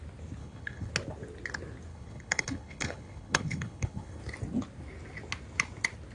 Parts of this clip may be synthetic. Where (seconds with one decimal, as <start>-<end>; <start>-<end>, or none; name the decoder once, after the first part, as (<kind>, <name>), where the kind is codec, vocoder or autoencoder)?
0.4-0.9 (codec, HILCodec); 1.9-4.2